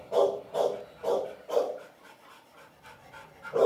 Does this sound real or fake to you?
real